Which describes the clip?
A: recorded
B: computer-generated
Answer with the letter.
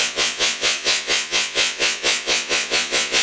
B